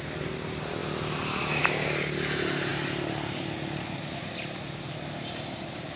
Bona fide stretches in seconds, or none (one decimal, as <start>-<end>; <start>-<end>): 0.0-6.0